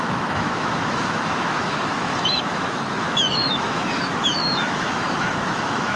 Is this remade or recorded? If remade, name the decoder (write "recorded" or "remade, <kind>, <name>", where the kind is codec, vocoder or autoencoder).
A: remade, autoencoder, DAC-VAE